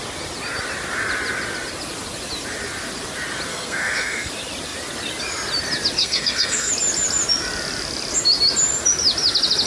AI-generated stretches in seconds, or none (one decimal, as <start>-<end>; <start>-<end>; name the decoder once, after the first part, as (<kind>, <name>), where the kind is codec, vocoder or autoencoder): 3.5-4.3 (codec, SNAC); 6.0-6.7